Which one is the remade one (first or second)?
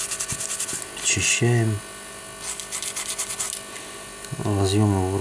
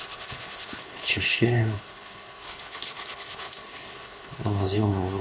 second